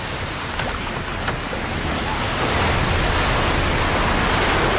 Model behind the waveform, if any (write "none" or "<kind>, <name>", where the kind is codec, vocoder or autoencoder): none